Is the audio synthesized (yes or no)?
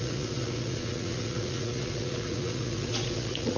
yes